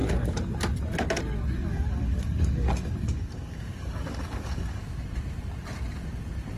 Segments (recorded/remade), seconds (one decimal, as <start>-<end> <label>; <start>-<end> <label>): 0.0-1.6 recorded; 1.6-4.8 remade; 4.8-6.6 recorded